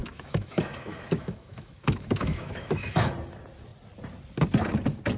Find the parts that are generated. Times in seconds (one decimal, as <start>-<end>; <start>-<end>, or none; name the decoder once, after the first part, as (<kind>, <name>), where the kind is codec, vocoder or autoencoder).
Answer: 0.0-3.1 (autoencoder, DAC-VAE)